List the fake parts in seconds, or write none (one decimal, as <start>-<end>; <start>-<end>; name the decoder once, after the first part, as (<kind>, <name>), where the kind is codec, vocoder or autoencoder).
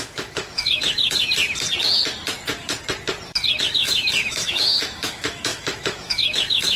0.0-1.0 (autoencoder, DAC-VAE); 3.6-6.8